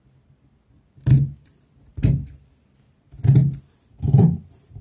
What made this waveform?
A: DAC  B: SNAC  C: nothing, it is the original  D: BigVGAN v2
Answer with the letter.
C